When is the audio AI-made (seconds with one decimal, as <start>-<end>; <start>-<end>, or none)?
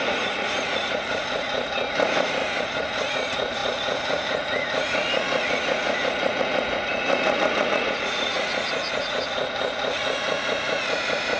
0.0-2.4; 3.1-11.4